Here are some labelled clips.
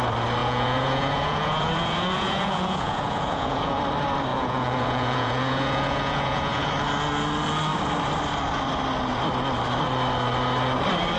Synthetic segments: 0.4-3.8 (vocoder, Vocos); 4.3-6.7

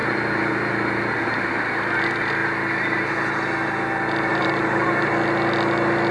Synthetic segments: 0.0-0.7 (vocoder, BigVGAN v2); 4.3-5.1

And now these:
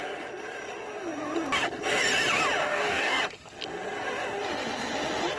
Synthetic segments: 2.6-3.2 (codec, DAC)